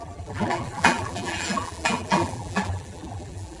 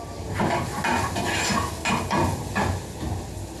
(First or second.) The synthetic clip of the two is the first